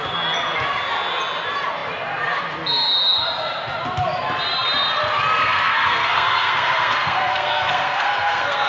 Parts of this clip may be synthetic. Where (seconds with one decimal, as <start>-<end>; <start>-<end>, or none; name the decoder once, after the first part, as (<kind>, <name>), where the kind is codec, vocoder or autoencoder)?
5.4-8.7 (codec, SNAC)